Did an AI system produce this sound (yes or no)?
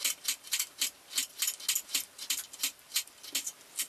no